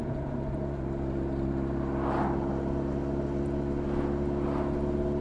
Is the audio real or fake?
real